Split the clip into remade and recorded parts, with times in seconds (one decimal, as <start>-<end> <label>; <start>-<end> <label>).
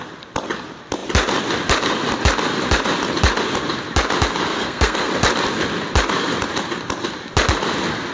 0.0-4.5 recorded; 4.5-5.1 remade; 5.1-8.1 recorded